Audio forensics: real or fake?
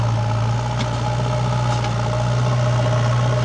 real